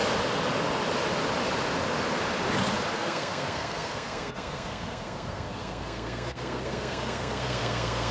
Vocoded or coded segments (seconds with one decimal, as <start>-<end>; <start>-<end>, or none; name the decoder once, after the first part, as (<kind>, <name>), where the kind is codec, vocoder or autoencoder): 2.9-8.1 (codec, SNAC)

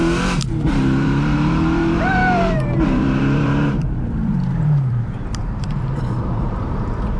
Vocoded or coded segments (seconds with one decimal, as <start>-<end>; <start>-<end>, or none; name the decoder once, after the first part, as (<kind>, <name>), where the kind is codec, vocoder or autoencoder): 0.5-7.2 (vocoder, BigVGAN v2)